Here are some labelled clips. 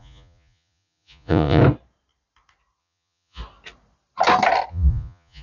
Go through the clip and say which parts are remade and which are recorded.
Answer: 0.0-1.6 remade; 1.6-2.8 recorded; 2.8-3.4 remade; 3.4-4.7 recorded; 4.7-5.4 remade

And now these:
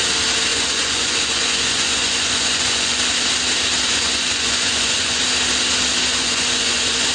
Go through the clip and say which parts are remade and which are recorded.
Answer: 0.0-0.5 recorded; 0.5-3.0 remade; 3.0-3.9 recorded; 3.9-5.2 remade; 5.2-6.1 recorded; 6.1-7.1 remade

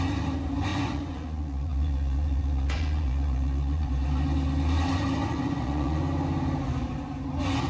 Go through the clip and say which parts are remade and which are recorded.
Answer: 0.0-0.7 recorded; 0.7-3.9 remade; 3.9-5.2 recorded; 5.2-6.0 remade; 6.0-7.7 recorded

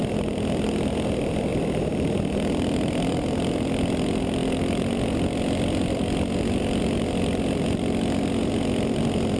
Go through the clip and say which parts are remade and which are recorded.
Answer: 0.0-9.4 recorded